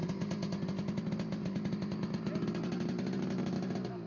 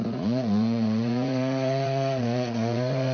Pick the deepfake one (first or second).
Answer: second